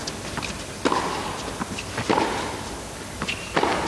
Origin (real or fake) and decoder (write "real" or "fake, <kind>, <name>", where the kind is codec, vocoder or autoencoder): real